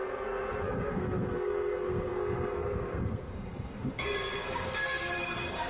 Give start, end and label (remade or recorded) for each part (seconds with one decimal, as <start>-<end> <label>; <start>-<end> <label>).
0.0-5.7 remade

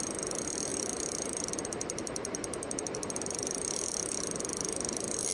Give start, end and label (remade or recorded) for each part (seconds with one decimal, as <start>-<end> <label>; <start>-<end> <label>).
0.0-5.3 recorded

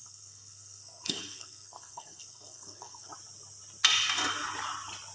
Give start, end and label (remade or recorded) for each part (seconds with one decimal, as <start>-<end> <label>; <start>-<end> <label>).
0.0-3.1 remade; 3.1-5.1 recorded

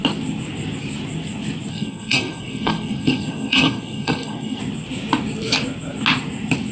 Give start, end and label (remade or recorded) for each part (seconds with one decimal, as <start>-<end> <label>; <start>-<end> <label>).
0.0-1.7 recorded; 1.7-4.6 remade; 4.6-6.7 recorded

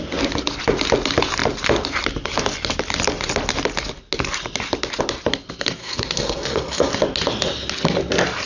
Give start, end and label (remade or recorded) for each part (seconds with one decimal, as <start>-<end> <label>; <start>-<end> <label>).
0.0-5.8 recorded; 5.8-6.9 remade; 6.9-8.5 recorded

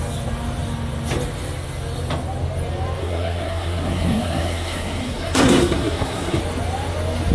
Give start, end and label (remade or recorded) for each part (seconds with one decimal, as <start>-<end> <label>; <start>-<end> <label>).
0.0-3.0 recorded; 3.0-6.4 remade; 6.4-7.3 recorded